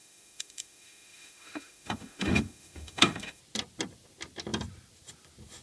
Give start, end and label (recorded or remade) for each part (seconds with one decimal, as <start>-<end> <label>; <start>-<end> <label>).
0.0-3.4 remade; 3.4-5.6 recorded